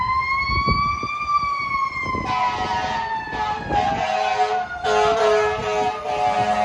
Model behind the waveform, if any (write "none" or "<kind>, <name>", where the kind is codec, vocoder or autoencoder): none